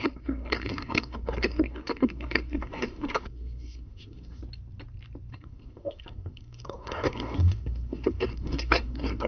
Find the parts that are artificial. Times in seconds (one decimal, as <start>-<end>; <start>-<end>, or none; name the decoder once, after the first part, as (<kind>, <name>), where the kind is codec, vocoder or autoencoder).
0.0-4.4 (codec, SNAC); 5.3-9.3